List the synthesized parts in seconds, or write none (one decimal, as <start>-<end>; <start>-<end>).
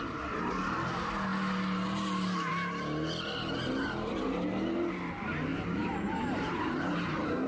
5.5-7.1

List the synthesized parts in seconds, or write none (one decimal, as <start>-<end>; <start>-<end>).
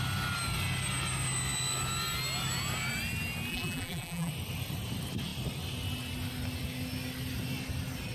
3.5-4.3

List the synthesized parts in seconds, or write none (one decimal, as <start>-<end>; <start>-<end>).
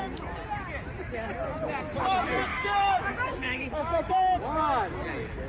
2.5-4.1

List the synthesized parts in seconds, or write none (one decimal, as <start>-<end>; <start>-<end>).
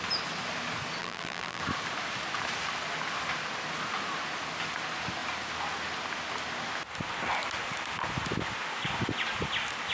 1.0-1.6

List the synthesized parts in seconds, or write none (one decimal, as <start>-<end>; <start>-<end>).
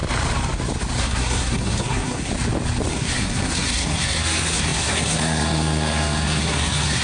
1.0-2.3; 2.9-7.0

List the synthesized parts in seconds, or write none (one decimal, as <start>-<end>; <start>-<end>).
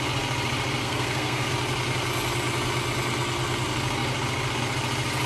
0.8-1.5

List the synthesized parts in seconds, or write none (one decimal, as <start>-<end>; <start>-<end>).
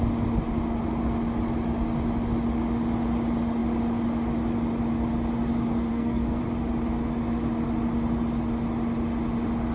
5.9-6.4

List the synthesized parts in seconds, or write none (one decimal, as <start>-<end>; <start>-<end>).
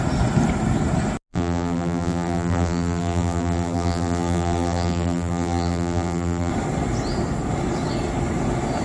1.3-6.5